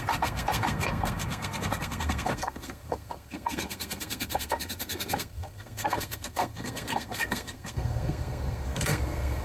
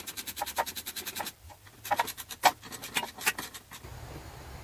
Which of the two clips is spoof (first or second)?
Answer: first